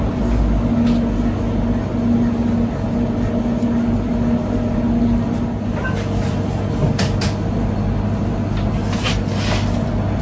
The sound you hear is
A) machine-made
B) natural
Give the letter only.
B